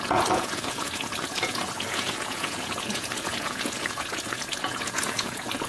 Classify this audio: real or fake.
fake